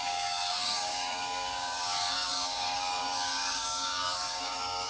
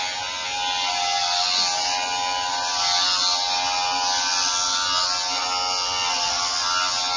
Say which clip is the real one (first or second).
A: second